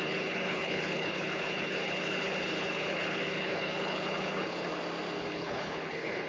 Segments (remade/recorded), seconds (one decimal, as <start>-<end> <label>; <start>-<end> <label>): 0.0-4.7 remade; 4.7-5.2 recorded; 5.2-6.3 remade